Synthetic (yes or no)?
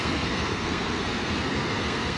yes